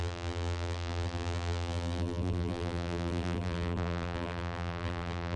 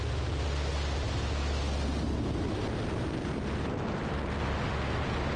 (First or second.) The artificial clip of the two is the first